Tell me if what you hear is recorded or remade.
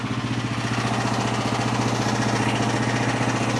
recorded